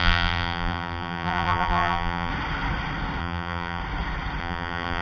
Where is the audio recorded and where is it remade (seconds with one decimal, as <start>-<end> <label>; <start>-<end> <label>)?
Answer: 0.0-2.3 remade; 2.3-3.2 recorded; 3.2-3.8 remade; 3.8-4.4 recorded; 4.4-5.0 remade